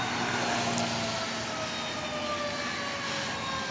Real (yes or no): yes